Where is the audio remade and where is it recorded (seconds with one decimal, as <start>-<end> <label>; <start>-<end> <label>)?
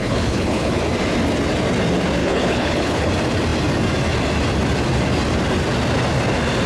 0.0-0.8 remade; 0.8-2.2 recorded; 2.2-3.1 remade; 3.1-6.7 recorded